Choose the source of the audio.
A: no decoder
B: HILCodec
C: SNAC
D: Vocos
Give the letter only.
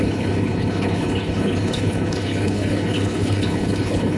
B